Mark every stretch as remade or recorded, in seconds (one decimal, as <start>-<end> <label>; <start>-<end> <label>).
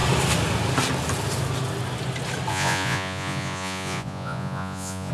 0.0-2.5 recorded; 2.5-5.1 remade